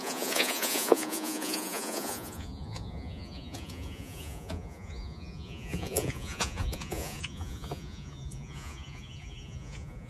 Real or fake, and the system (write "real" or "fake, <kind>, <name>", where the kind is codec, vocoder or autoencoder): fake, vocoder, Vocos